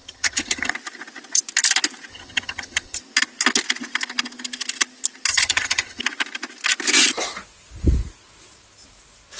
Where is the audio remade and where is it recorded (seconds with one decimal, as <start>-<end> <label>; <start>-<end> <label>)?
0.0-0.7 remade; 0.7-2.1 recorded; 2.1-3.0 remade; 3.0-5.3 recorded; 5.3-6.0 remade; 6.0-9.4 recorded